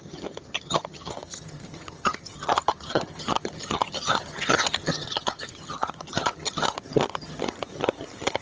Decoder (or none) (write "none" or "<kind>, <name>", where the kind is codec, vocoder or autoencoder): vocoder, HiFi-GAN